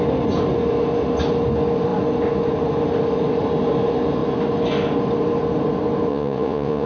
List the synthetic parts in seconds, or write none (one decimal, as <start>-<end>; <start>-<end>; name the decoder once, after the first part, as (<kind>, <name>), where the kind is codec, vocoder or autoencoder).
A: 6.1-6.9 (vocoder, Vocos)